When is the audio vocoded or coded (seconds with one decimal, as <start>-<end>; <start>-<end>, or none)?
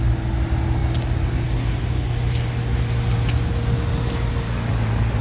none